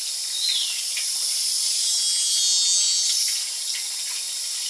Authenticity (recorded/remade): recorded